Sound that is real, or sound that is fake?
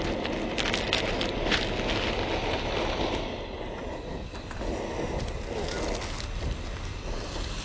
real